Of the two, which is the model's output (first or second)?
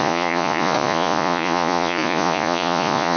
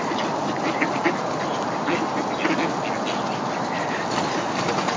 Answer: first